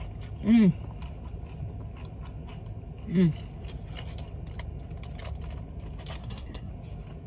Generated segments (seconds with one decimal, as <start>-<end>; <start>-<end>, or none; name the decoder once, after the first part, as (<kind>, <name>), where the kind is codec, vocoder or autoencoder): 6.2-6.7 (codec, SNAC)